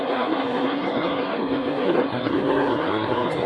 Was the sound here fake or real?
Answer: fake